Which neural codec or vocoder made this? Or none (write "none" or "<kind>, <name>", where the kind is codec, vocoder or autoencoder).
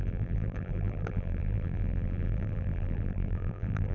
vocoder, BigVGAN v2